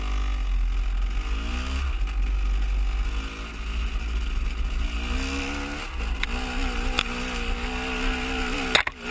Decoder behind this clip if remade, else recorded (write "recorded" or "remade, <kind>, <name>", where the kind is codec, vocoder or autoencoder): recorded